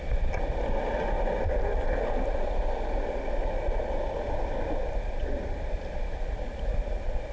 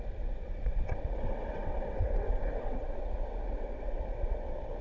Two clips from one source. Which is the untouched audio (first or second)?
first